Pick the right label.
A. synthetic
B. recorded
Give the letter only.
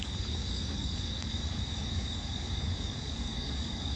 A